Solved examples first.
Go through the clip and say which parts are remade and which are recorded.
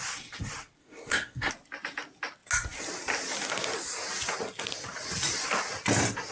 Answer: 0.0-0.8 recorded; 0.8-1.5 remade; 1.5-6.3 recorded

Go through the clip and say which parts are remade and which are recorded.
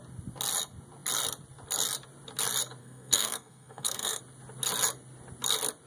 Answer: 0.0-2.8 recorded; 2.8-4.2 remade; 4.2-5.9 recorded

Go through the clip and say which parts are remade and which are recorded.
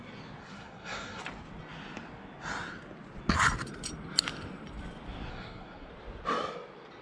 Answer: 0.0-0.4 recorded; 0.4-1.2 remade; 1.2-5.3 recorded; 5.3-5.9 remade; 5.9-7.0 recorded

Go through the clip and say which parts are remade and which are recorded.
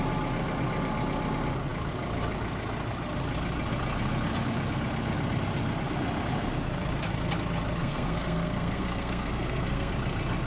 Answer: 0.0-7.8 recorded; 7.8-9.9 remade; 9.9-10.5 recorded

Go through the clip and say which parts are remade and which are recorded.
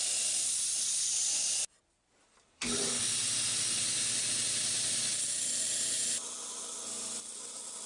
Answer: 0.0-7.9 recorded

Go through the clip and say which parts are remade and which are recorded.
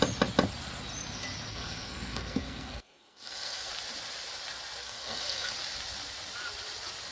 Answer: 0.0-1.5 recorded; 1.5-3.7 remade; 3.7-4.8 recorded; 4.8-5.5 remade; 5.5-7.1 recorded